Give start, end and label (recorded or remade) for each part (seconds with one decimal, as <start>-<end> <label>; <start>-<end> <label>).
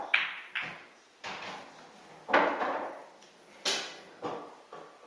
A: 0.0-5.1 recorded